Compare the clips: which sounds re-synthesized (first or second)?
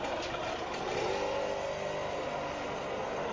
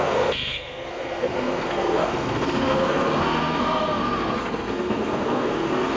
second